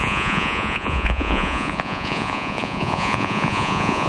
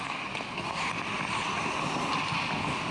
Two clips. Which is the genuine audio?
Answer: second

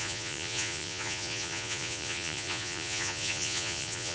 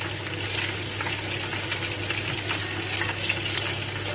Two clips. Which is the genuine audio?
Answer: second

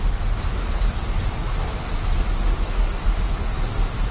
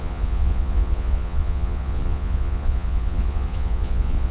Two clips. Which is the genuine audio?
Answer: first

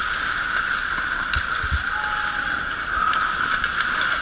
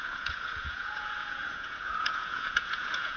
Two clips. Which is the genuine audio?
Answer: first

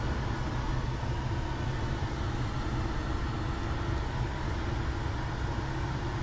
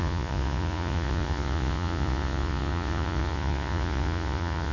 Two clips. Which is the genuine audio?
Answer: first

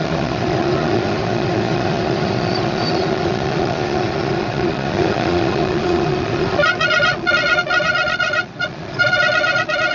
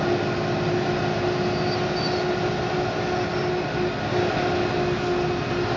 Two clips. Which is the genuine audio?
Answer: second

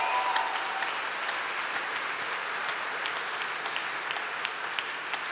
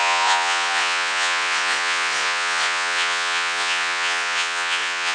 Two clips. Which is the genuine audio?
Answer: first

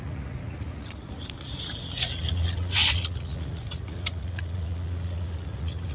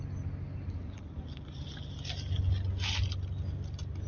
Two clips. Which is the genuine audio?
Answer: second